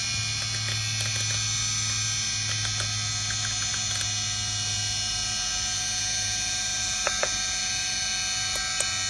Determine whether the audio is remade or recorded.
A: recorded